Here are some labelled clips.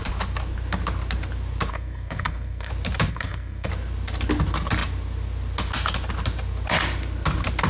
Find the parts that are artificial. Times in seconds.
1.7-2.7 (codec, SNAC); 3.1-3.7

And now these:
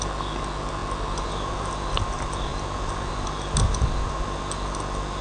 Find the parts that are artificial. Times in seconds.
none

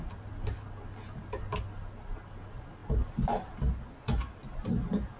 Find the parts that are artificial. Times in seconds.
none

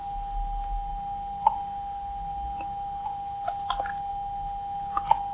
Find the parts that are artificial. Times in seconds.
none

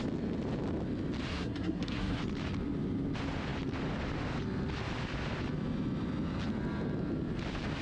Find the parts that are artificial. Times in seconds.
1.3-2.2 (codec, SNAC)

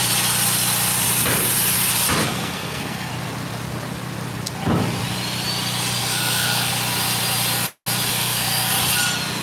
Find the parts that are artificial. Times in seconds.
2.2-3.1 (codec, SNAC); 6.0-6.7; 8.1-8.7

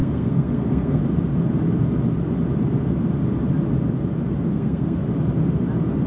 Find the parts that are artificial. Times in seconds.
0.0-1.0 (codec, SNAC); 4.5-5.0